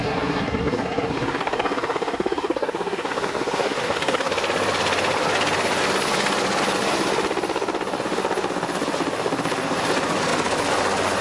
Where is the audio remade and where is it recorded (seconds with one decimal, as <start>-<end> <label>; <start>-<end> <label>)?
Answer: 0.0-4.3 remade; 4.3-11.2 recorded